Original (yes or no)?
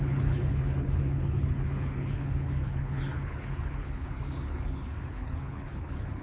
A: no